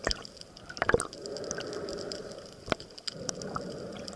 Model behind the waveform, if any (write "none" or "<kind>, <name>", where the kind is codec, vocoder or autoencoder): none